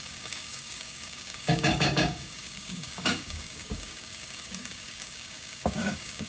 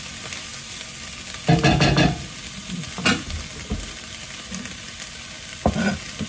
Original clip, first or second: second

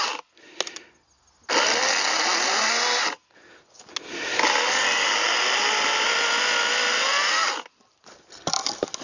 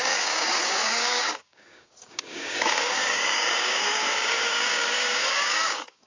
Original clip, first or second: first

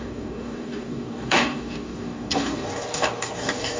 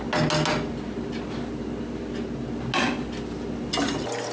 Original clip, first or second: second